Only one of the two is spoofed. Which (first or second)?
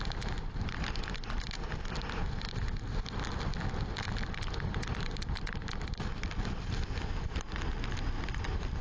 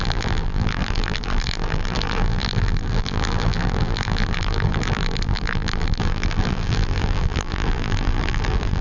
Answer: second